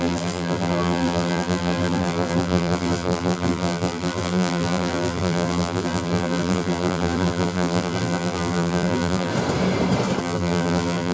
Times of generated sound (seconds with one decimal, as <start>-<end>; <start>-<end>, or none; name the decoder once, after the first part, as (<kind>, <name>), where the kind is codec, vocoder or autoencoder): 0.0-9.3 (vocoder, BigVGAN v2); 10.2-11.1